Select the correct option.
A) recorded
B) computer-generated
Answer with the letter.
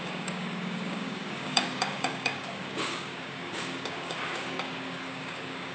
B